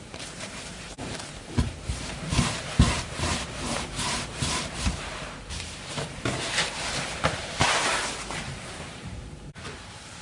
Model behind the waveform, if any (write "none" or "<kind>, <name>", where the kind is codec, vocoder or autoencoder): vocoder, BigVGAN v2